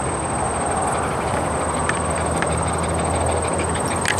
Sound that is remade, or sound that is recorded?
recorded